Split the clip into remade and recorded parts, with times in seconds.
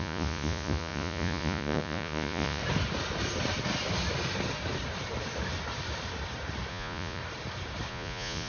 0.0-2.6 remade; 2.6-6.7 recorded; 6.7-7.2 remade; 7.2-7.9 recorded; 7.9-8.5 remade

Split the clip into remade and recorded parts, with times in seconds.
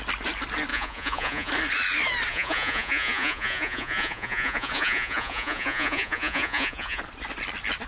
0.0-0.7 recorded; 0.7-1.5 remade; 1.5-2.3 recorded; 2.3-7.0 remade; 7.0-7.9 recorded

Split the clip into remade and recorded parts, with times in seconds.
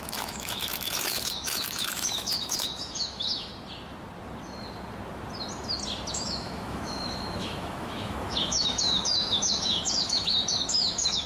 0.0-3.5 remade; 3.5-6.1 recorded; 6.1-11.3 remade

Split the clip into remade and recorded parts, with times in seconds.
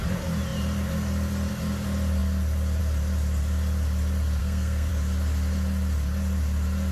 0.0-4.4 recorded; 4.4-4.9 remade; 4.9-6.9 recorded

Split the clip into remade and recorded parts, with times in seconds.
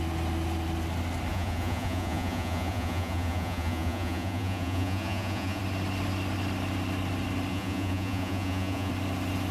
0.0-1.3 recorded; 1.3-5.6 remade; 5.6-7.5 recorded; 7.5-8.9 remade; 8.9-9.5 recorded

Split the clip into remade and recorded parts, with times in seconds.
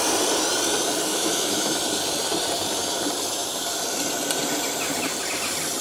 0.0-1.1 recorded; 1.1-1.7 remade; 1.7-5.8 recorded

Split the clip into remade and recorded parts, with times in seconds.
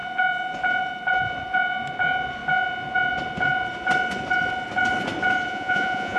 0.0-5.5 recorded; 5.5-6.2 remade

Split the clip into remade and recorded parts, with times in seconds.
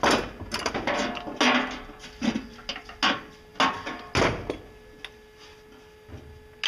0.0-6.7 recorded